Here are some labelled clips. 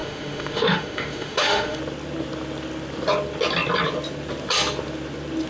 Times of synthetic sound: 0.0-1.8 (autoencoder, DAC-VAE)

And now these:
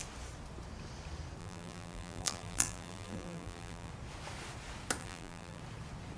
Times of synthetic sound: 1.4-3.9 (vocoder, BigVGAN v2); 5.0-5.6

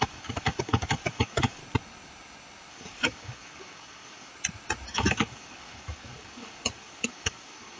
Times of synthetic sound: 0.0-1.6 (codec, DAC); 2.7-4.3; 4.9-7.8

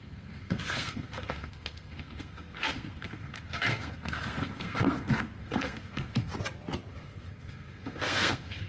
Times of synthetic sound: 0.0-6.3 (codec, SNAC); 6.9-8.7

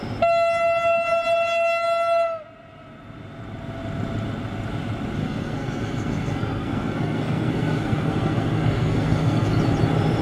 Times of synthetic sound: 5.2-9.6 (codec, SNAC)

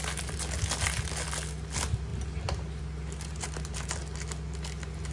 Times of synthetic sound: 3.3-4.0 (vocoder, BigVGAN v2)

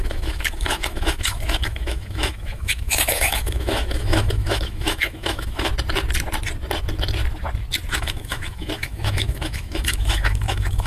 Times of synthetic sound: 0.0-5.7 (autoencoder, DAC-VAE); 7.9-10.9